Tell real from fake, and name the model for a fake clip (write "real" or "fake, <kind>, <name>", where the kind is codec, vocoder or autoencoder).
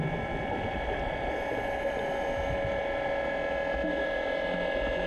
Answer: real